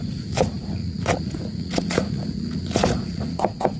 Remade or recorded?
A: remade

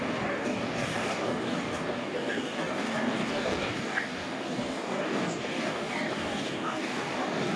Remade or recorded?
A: remade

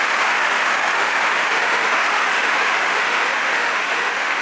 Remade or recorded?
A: remade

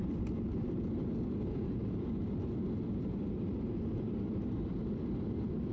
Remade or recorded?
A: recorded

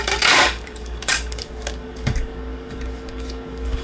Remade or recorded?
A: remade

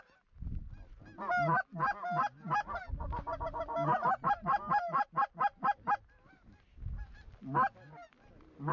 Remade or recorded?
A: recorded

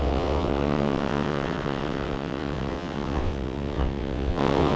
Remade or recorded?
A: remade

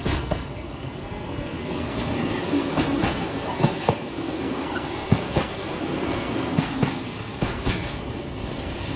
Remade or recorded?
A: remade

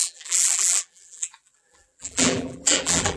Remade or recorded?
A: remade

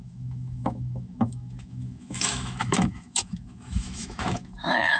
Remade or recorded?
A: remade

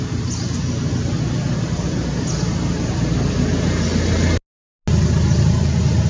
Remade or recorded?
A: recorded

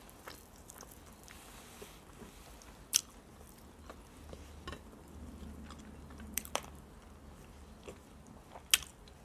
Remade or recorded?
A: recorded